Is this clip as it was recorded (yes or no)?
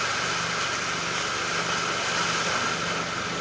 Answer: yes